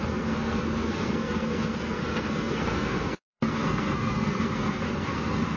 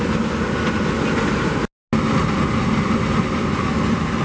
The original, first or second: second